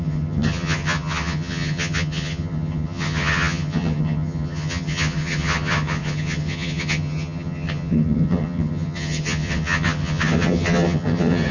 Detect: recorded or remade remade